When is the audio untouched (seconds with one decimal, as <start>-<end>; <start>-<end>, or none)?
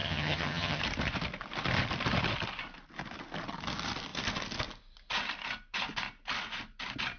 0.8-7.2